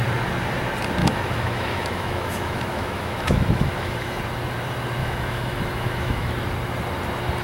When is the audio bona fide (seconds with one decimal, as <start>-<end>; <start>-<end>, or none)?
0.0-1.0; 4.2-5.0; 6.3-7.4